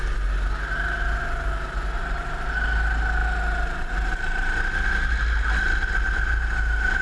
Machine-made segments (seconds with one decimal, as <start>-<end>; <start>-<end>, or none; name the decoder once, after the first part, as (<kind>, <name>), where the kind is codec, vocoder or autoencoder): none